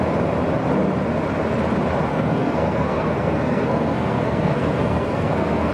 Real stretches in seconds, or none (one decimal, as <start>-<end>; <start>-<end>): 0.0-2.1